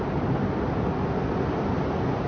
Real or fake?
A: real